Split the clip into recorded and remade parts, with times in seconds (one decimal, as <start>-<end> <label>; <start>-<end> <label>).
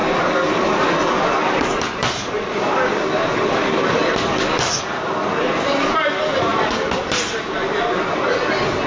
0.0-8.9 recorded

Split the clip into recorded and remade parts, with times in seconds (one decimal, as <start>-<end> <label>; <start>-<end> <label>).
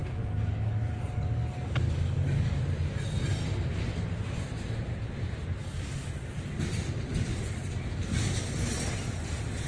0.0-2.6 remade; 2.6-5.6 recorded; 5.6-6.3 remade; 6.3-9.7 recorded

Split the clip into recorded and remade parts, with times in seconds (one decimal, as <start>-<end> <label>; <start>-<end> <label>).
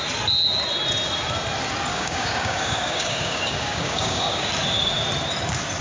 0.0-1.9 recorded; 1.9-4.5 remade; 4.5-5.8 recorded